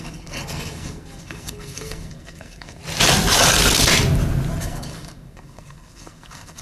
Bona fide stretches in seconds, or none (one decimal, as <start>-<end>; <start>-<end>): 2.8-4.6